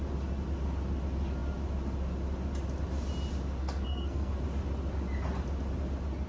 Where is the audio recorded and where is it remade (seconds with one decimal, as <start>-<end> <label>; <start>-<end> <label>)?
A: 0.0-3.6 recorded; 3.6-4.3 remade; 4.3-6.3 recorded